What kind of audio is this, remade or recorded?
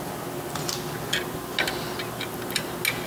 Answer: recorded